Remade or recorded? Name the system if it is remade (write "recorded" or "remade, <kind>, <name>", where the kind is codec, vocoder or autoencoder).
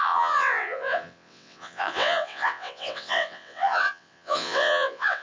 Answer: remade, vocoder, WaveNeXt